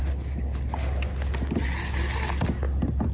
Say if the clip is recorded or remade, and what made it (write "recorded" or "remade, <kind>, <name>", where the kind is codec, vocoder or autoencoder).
recorded